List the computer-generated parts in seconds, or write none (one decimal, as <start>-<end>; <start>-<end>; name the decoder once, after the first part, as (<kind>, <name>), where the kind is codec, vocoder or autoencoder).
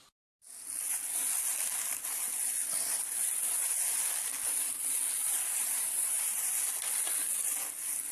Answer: 5.2-6.5 (vocoder, BigVGAN v2)